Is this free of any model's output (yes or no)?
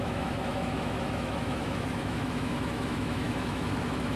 no